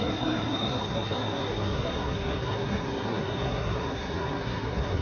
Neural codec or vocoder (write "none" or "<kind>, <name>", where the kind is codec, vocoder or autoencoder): codec, SNAC